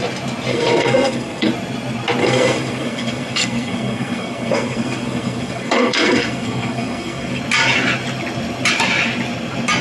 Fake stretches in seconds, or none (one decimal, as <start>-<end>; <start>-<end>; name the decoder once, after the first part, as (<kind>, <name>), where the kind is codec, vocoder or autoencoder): 0.5-1.5 (codec, SNAC); 2.2-7.4